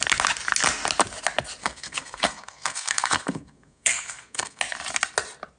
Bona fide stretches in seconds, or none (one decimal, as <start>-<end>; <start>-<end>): 0.0-1.6; 4.6-5.6